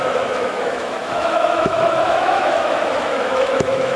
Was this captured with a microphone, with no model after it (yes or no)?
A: no